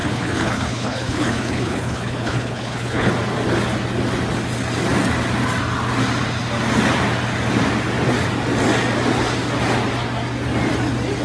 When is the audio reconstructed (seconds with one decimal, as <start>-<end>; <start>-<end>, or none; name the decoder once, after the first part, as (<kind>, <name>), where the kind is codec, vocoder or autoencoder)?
0.0-3.1 (codec, HILCodec)